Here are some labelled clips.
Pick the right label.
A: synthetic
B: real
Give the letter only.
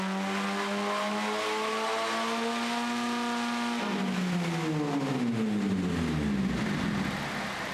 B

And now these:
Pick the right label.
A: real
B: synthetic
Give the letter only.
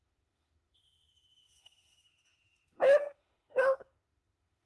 B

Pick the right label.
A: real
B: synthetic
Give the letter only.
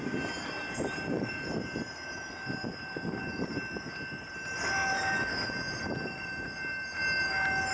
A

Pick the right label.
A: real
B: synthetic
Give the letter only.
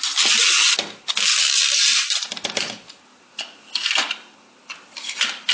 A